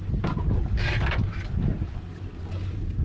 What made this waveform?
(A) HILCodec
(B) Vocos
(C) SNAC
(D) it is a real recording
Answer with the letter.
D